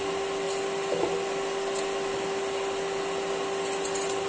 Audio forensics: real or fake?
real